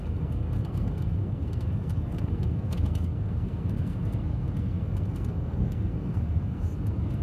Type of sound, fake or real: fake